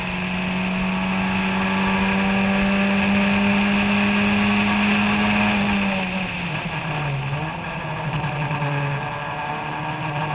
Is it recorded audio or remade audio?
recorded